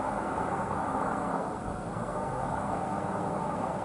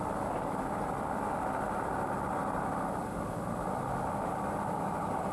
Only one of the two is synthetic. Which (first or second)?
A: first